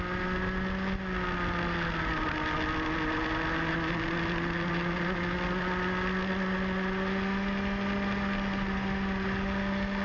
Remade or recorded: recorded